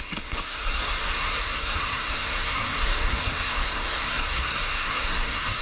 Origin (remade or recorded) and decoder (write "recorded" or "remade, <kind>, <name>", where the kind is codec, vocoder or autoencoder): remade, codec, SNAC